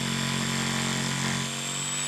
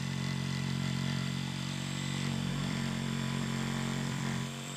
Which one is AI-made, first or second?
second